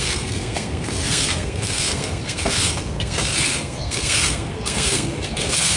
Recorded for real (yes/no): no